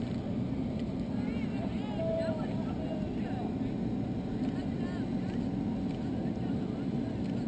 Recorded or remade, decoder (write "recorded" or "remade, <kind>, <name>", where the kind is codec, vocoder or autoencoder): recorded